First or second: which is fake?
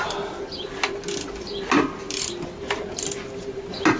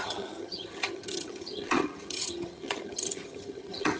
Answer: second